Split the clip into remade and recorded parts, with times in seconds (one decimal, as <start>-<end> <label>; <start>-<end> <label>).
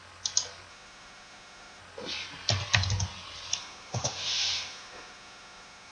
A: 0.0-0.7 recorded; 0.7-1.8 remade; 1.8-3.6 recorded; 3.6-5.9 remade